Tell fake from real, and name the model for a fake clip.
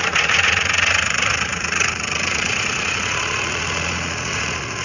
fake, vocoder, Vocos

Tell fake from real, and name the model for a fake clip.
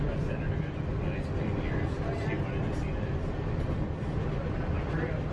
real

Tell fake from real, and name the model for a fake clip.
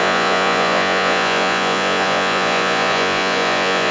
fake, vocoder, Vocos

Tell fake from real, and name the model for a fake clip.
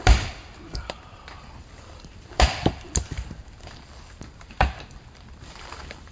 fake, vocoder, BigVGAN v2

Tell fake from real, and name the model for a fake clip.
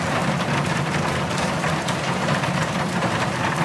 fake, vocoder, BigVGAN v2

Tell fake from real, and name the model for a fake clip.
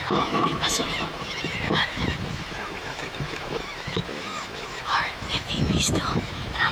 fake, autoencoder, DAC-VAE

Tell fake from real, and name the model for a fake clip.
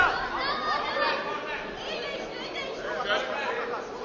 real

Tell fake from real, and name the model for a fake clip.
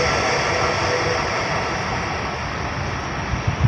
real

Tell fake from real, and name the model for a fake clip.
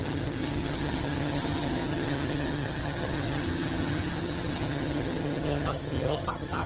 fake, vocoder, HiFi-GAN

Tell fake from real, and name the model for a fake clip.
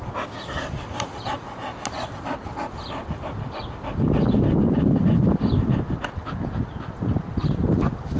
real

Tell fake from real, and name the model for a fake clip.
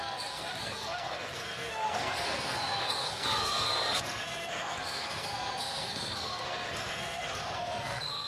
fake, codec, SNAC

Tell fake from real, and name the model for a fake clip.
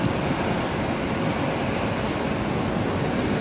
real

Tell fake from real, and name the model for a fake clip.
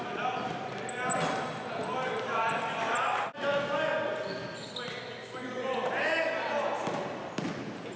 real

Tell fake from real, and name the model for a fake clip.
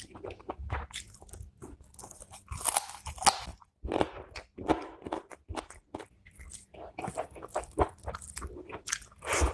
real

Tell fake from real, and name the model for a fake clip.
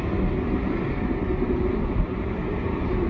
real